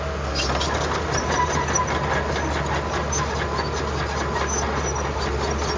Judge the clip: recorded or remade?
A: recorded